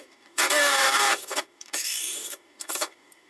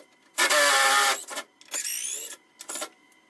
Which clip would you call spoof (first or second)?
first